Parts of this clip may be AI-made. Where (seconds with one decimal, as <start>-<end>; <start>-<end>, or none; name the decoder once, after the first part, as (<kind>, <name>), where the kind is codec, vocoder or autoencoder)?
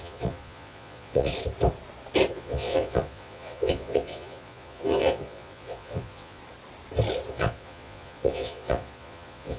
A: 0.0-1.3 (vocoder, Vocos); 2.3-6.4; 7.3-9.6